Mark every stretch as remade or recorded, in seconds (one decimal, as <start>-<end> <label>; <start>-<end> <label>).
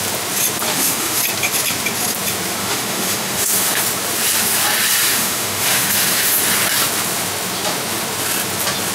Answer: 0.0-0.7 recorded; 0.7-1.2 remade; 1.2-2.6 recorded; 2.6-3.8 remade; 3.8-5.1 recorded; 5.1-6.4 remade; 6.4-8.9 recorded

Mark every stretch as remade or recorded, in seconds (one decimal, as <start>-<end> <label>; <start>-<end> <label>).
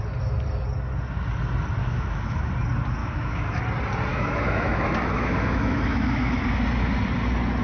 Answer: 0.0-1.8 recorded; 1.8-2.5 remade; 2.5-3.0 recorded; 3.0-3.6 remade; 3.6-4.1 recorded; 4.1-6.4 remade; 6.4-7.6 recorded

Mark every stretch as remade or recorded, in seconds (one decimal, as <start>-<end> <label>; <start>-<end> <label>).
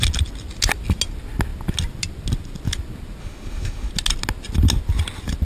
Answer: 0.0-3.2 recorded; 3.2-3.9 remade; 3.9-5.4 recorded